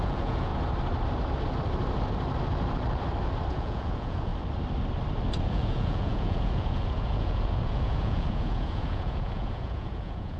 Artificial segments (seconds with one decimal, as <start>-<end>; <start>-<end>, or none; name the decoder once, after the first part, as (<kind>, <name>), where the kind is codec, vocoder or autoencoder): 0.0-0.5 (vocoder, Vocos); 3.5-4.3; 5.5-10.4